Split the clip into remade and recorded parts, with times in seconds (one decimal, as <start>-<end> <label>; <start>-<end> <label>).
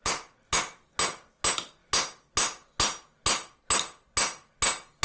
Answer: 0.0-5.0 recorded